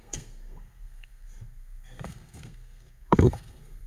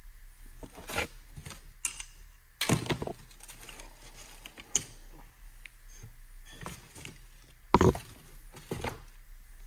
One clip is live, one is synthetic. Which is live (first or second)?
second